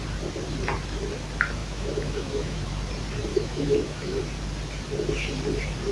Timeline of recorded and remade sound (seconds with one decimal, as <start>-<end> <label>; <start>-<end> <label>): 0.0-1.6 recorded; 1.6-2.7 remade; 2.7-3.3 recorded; 3.3-4.2 remade; 4.2-5.9 recorded